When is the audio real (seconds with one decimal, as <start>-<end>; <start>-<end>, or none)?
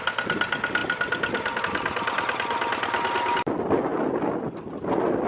0.0-5.3